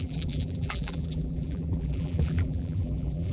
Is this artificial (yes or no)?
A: yes